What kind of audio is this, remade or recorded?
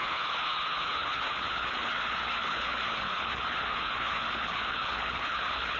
remade